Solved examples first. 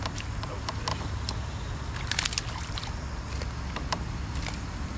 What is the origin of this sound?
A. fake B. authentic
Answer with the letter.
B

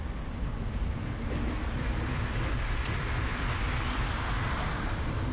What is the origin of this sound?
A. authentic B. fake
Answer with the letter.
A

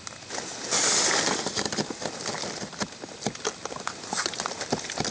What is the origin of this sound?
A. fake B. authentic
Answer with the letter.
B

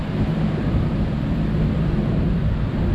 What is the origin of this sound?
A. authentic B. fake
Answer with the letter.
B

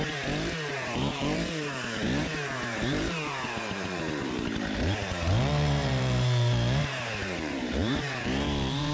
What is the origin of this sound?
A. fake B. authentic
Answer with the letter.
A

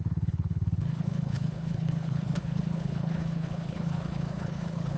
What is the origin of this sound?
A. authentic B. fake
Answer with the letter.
B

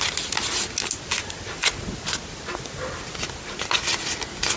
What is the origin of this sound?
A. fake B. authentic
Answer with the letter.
B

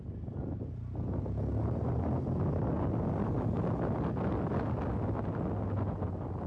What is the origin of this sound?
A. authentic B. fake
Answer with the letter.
A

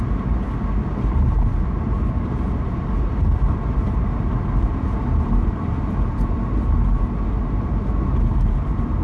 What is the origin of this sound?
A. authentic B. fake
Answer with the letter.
A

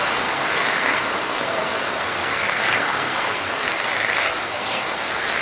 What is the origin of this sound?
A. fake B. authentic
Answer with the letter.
A